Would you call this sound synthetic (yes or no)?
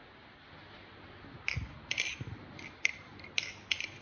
no